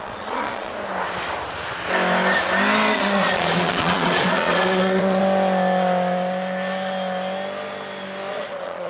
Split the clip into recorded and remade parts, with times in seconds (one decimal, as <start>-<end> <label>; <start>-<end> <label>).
0.0-0.7 remade; 0.7-2.9 recorded; 2.9-5.2 remade; 5.2-8.3 recorded; 8.3-8.9 remade